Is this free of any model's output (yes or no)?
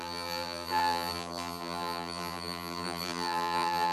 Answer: no